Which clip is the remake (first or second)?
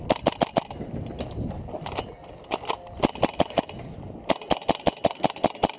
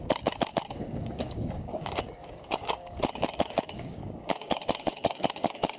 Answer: second